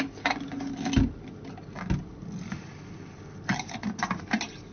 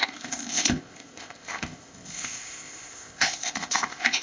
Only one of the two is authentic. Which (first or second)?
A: first